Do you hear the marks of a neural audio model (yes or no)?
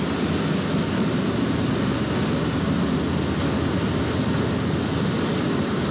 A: no